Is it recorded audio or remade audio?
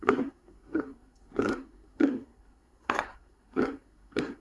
remade